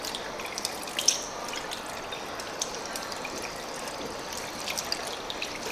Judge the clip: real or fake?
fake